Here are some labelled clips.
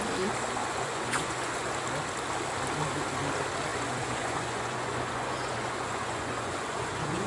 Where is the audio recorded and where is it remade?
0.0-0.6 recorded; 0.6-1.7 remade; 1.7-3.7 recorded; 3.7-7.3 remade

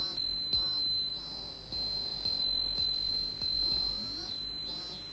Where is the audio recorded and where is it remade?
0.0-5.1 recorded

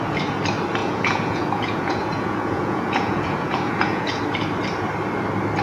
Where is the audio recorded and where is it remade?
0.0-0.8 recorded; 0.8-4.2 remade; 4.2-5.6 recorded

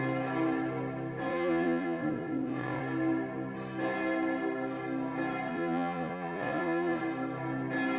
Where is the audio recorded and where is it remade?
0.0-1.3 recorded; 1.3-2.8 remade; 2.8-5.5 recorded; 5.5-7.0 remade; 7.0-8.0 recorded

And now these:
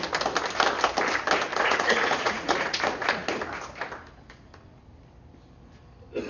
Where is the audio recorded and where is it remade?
0.0-1.5 recorded; 1.5-2.8 remade; 2.8-6.3 recorded

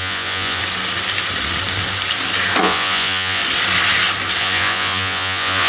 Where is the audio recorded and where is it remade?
0.0-0.6 remade; 0.6-2.6 recorded; 2.6-3.4 remade; 3.4-4.4 recorded; 4.4-5.7 remade

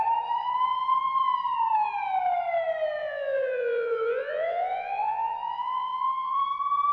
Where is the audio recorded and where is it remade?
0.0-3.0 recorded; 3.0-6.4 remade; 6.4-6.9 recorded

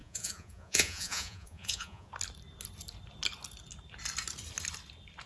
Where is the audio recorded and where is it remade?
0.0-2.1 remade; 2.1-5.3 recorded